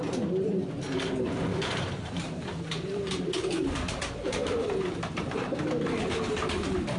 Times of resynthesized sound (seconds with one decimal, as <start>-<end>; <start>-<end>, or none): 1.5-5.7